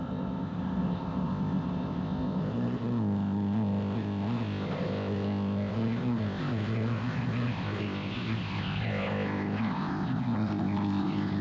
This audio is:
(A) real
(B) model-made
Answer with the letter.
B